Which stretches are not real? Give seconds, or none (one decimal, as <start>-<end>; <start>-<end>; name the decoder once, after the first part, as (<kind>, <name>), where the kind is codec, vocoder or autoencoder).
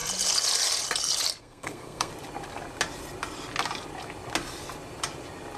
1.4-2.1 (codec, SNAC)